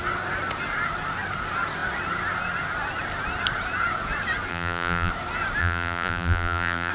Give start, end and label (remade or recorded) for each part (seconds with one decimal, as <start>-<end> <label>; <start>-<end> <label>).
0.0-4.5 recorded; 4.5-5.1 remade; 5.1-5.6 recorded; 5.6-6.9 remade